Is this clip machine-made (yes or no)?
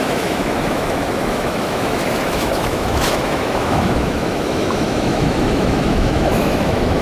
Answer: yes